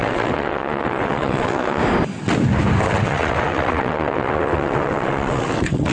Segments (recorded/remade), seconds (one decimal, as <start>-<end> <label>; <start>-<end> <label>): 0.0-1.8 remade; 1.8-2.8 recorded; 2.8-5.9 remade